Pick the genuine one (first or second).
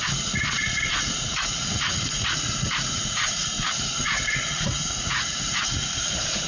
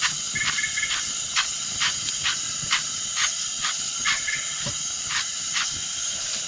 second